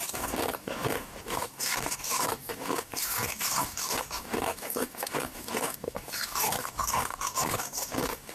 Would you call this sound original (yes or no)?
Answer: no